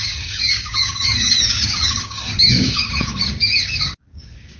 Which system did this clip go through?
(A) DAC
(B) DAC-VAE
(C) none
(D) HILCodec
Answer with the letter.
A